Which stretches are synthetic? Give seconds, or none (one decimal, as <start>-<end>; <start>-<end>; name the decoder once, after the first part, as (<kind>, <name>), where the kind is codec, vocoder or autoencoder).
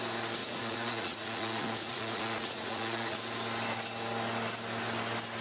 0.4-3.2 (vocoder, Vocos)